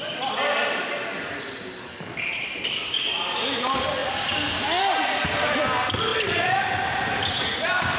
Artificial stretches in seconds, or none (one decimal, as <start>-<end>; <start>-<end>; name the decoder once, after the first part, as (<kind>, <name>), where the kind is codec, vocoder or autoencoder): none

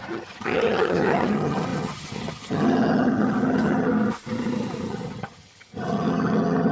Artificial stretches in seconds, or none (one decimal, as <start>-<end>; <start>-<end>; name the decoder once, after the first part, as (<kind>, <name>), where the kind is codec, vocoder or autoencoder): 0.0-3.9 (vocoder, HiFi-GAN); 4.9-6.7

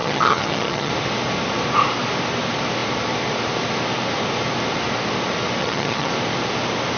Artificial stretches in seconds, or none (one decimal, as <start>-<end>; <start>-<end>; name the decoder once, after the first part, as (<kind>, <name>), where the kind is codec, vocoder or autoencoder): 0.0-0.9 (vocoder, HiFi-GAN); 5.6-6.1